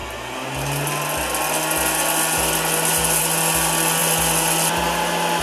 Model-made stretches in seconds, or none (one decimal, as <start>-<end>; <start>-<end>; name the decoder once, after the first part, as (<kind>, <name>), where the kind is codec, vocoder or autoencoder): none